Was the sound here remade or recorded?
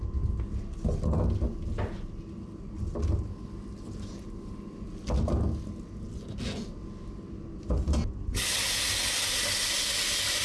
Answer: recorded